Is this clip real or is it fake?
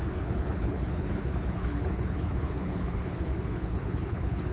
fake